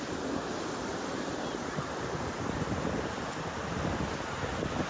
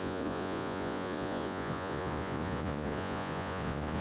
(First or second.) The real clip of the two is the first